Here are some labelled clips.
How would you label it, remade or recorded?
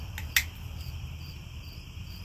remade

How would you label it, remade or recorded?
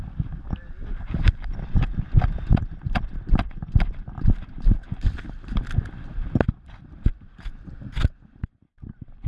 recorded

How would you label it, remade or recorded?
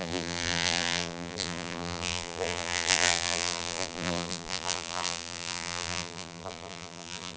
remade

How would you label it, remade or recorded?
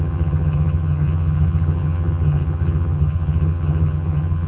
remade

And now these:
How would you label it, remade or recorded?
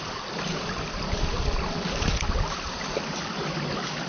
recorded